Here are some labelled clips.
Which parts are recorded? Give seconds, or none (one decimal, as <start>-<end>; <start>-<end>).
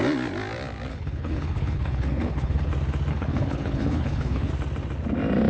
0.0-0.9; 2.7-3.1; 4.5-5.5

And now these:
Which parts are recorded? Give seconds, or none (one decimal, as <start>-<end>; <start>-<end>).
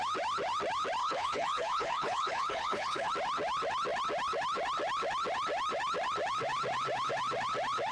0.0-1.0; 3.1-7.9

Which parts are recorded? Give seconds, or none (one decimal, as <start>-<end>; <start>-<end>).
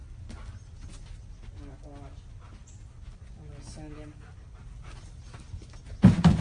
0.0-6.4